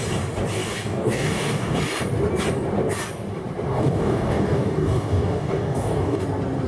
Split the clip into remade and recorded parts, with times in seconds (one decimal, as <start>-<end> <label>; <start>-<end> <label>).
0.0-0.6 recorded; 0.6-1.8 remade; 1.8-3.7 recorded; 3.7-6.2 remade; 6.2-6.7 recorded